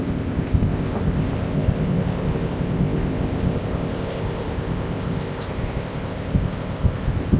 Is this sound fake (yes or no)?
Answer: yes